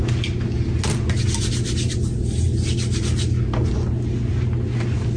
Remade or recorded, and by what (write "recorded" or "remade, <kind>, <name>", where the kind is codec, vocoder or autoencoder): recorded